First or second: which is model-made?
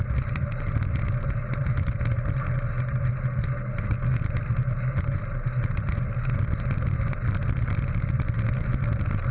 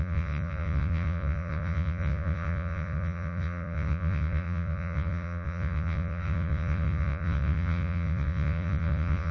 second